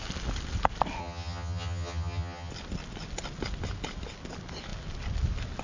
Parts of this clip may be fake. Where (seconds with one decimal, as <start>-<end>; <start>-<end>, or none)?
1.0-2.5